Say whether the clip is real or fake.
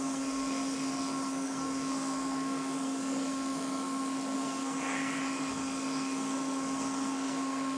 fake